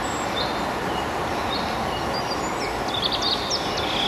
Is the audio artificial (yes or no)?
no